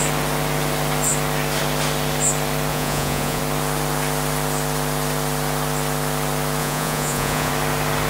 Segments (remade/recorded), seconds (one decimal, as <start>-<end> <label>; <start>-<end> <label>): 0.0-2.7 recorded; 2.7-3.4 remade; 3.4-6.6 recorded; 6.6-7.5 remade; 7.5-8.1 recorded